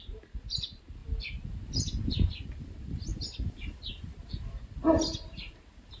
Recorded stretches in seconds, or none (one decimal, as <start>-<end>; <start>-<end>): 0.0-3.1; 3.9-6.0

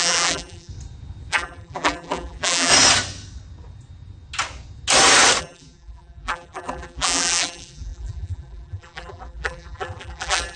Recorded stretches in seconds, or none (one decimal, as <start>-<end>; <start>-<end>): 0.7-1.3; 2.7-5.4

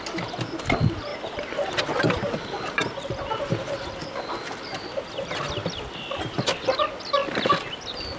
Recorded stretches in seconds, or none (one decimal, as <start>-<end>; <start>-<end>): 0.0-7.2; 7.7-8.2

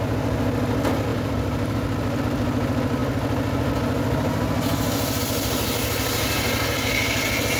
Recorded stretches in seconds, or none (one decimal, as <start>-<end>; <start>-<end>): 0.0-1.1; 2.2-7.6

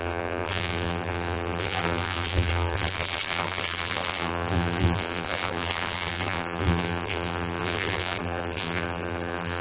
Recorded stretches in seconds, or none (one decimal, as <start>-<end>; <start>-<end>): none

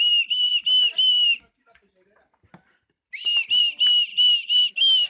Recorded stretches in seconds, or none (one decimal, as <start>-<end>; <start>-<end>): 0.0-4.1; 4.6-5.1

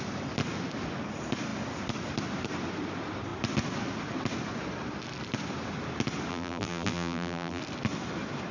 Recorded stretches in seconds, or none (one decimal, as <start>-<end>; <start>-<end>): 0.0-6.3; 7.6-8.5